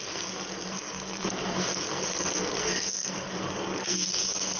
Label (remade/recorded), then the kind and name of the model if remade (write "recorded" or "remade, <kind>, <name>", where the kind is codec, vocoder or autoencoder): remade, codec, SNAC